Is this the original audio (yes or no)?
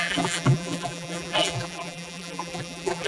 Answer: no